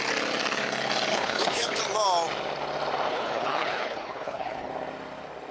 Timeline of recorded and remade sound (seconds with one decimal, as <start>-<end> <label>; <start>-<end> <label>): 0.0-1.1 recorded; 1.1-1.8 remade; 1.8-3.1 recorded; 3.1-4.7 remade; 4.7-5.5 recorded